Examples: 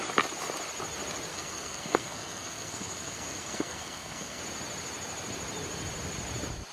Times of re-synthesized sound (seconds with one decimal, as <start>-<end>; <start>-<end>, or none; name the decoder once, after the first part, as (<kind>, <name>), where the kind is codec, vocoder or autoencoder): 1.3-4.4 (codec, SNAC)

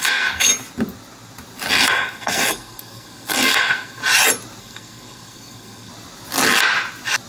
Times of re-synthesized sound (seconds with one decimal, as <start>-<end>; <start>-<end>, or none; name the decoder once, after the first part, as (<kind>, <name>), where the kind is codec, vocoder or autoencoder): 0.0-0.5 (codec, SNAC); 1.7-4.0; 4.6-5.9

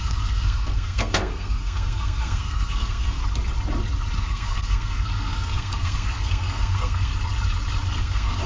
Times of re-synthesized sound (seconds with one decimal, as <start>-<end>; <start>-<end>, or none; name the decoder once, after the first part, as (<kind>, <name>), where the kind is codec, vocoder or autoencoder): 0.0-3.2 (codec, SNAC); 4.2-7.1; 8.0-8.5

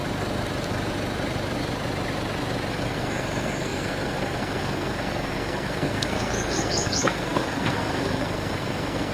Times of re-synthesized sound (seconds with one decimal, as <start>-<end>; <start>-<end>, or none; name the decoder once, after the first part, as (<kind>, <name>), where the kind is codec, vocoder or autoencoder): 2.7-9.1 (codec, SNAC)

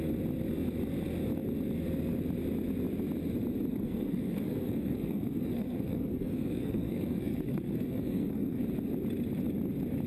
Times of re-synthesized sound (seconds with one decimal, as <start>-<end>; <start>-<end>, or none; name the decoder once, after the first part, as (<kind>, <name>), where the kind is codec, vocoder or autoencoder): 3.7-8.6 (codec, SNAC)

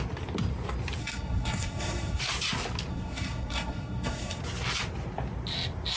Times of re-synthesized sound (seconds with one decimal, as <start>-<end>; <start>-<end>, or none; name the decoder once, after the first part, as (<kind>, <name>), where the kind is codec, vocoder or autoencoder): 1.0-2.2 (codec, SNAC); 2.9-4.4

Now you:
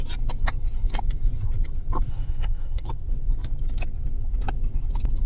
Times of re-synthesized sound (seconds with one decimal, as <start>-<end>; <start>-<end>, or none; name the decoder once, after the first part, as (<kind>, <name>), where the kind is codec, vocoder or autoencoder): 2.1-2.9 (codec, SNAC)